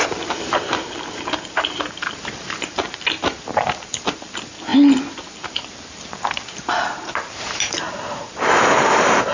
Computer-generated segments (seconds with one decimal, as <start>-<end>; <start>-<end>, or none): 0.0-4.7; 5.3-9.3